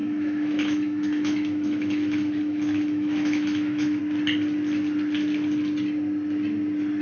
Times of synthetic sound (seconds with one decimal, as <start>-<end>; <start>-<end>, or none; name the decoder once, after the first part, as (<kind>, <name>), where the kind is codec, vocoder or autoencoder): 0.0-4.0 (autoencoder, DAC-VAE)

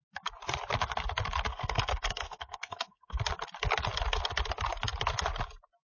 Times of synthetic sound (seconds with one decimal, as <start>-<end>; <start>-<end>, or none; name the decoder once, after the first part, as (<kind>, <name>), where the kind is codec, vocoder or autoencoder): 1.5-3.2 (codec, SNAC)

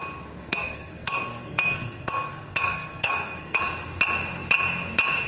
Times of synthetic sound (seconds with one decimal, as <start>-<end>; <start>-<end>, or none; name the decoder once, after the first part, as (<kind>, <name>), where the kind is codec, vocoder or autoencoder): 0.4-3.6 (codec, SNAC)